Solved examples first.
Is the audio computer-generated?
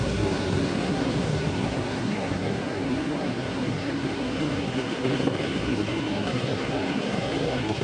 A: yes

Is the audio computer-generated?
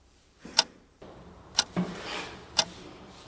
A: yes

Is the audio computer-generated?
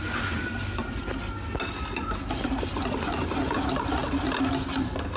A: no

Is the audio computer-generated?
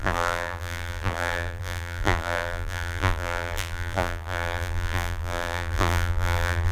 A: yes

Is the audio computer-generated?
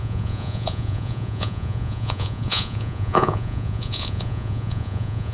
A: yes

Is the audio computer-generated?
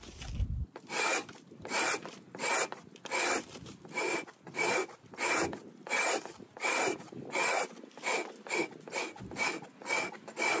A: no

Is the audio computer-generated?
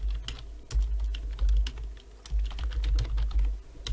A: no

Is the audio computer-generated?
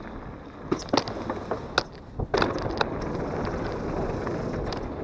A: no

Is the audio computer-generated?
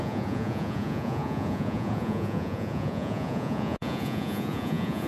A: yes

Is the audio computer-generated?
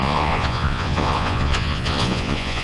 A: yes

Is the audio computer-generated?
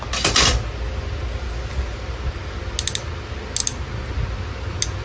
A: no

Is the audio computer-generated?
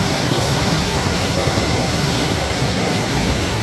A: yes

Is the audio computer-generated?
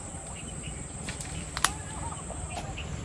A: no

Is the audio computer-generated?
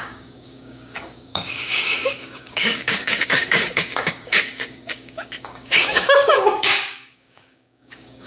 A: yes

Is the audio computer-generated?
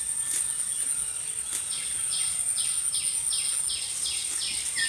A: no